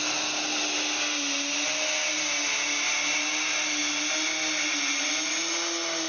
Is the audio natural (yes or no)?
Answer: yes